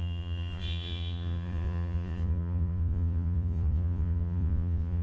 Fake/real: fake